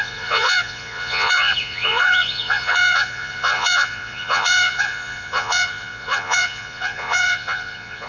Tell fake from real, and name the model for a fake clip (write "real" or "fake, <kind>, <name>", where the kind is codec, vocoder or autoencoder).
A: fake, vocoder, Vocos